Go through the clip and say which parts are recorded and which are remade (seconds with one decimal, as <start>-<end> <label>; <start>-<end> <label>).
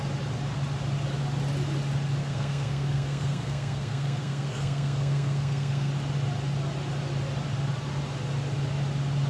0.0-2.2 recorded; 2.2-5.9 remade; 5.9-9.3 recorded